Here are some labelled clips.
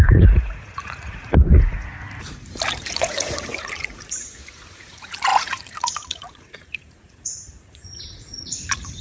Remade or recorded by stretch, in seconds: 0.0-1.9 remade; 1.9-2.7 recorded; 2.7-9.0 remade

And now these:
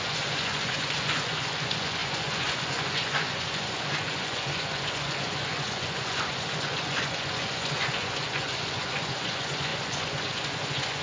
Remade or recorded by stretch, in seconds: 0.0-11.0 remade

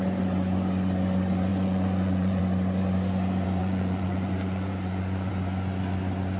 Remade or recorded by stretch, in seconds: 0.0-1.5 recorded; 1.5-2.4 remade; 2.4-3.6 recorded; 3.6-5.3 remade; 5.3-6.4 recorded

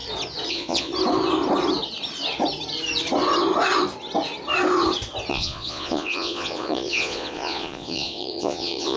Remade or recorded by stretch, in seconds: 0.0-0.5 recorded; 0.5-0.9 remade; 0.9-5.3 recorded; 5.3-9.0 remade

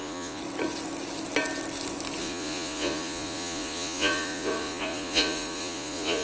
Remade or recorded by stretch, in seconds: 0.0-0.4 remade; 0.4-2.2 recorded; 2.2-6.2 remade

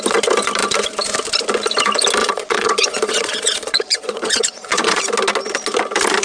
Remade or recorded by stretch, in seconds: 0.0-2.2 recorded; 2.2-5.0 remade; 5.0-6.2 recorded